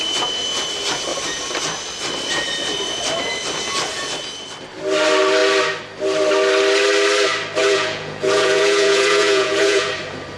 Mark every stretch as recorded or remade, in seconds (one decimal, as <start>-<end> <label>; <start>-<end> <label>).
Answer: 0.0-7.6 recorded; 7.6-9.9 remade; 9.9-10.4 recorded